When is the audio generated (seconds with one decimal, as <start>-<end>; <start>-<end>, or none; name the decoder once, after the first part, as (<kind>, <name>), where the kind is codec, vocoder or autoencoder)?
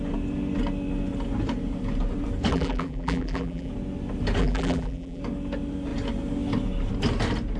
2.5-3.7 (vocoder, BigVGAN v2); 4.4-5.2